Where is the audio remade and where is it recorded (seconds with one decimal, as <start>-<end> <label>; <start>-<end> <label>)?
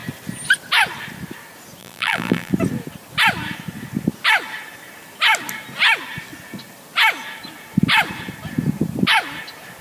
0.0-1.8 recorded; 1.8-2.5 remade; 2.5-9.8 recorded